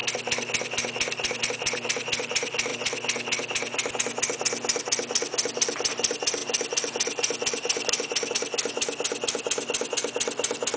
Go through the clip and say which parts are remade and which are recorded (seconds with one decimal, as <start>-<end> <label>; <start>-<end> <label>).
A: 0.0-10.8 recorded